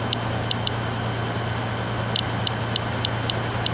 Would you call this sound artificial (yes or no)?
no